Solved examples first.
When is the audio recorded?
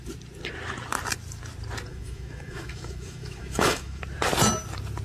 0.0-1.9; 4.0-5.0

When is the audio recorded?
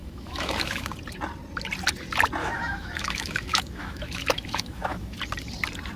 0.9-2.4; 5.2-6.0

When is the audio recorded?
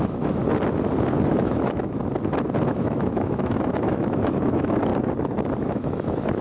0.4-1.3; 2.0-2.7; 4.9-5.6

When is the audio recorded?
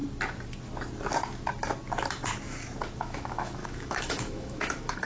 0.0-3.0